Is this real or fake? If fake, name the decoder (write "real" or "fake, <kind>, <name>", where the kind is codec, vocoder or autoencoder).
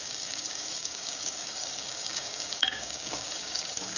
fake, codec, DAC